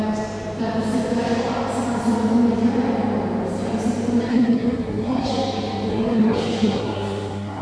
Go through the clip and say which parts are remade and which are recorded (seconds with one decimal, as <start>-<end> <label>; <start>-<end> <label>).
0.0-4.3 recorded; 4.3-5.3 remade; 5.3-5.9 recorded; 5.9-7.6 remade